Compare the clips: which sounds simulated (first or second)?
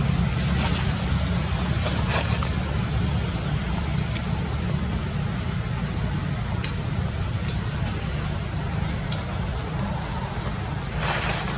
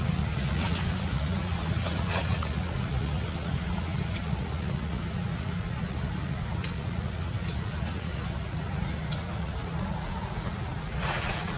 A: second